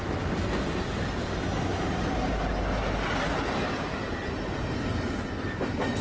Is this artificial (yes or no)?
no